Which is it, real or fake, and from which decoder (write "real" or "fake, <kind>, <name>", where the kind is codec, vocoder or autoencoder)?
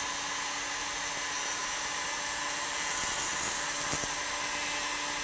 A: real